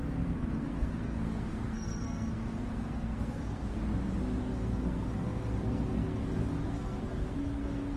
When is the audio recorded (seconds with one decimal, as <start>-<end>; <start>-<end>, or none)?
3.8-4.4